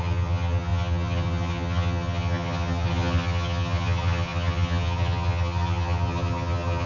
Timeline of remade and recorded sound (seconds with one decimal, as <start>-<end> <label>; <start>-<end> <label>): 0.0-6.9 remade

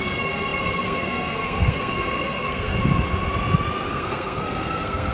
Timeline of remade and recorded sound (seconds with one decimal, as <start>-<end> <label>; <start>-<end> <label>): 0.0-2.8 remade; 2.8-3.9 recorded; 3.9-5.1 remade

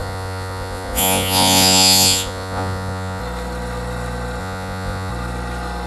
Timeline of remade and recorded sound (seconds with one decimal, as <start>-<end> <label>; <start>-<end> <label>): 0.0-3.2 remade; 3.2-4.4 recorded; 4.4-5.1 remade; 5.1-5.9 recorded

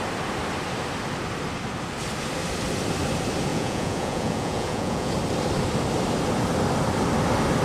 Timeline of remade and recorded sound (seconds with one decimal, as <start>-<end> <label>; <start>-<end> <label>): 0.0-3.5 recorded; 3.5-5.1 remade; 5.1-7.6 recorded

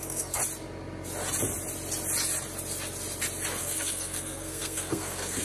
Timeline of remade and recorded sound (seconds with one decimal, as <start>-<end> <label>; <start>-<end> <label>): 0.0-0.4 remade; 0.4-3.6 recorded; 3.6-5.4 remade

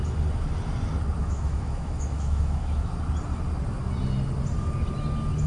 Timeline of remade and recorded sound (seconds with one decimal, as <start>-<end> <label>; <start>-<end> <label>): 0.0-1.2 recorded; 1.2-2.9 remade; 2.9-5.5 recorded

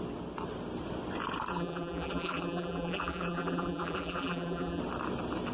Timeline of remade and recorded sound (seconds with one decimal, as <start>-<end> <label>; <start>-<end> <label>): 0.0-1.5 recorded; 1.5-4.8 remade; 4.8-5.5 recorded